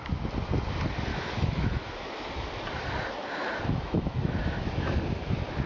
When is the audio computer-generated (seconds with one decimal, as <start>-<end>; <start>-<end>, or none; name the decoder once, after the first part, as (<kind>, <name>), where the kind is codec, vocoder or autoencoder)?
1.1-2.3 (autoencoder, DAC-VAE); 3.4-5.1